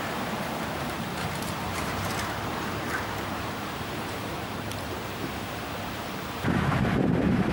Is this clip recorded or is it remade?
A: remade